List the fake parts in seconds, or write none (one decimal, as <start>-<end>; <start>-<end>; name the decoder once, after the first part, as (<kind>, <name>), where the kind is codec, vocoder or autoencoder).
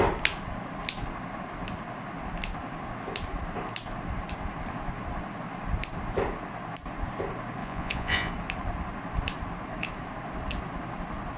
7.6-8.3 (vocoder, Vocos)